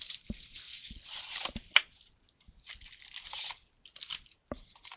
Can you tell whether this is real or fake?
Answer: real